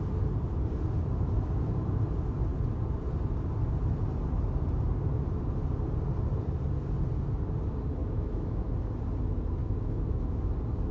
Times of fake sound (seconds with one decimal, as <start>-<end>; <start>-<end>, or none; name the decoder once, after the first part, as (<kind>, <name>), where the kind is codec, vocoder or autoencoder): 8.0-8.7 (autoencoder, DAC-VAE); 9.6-10.5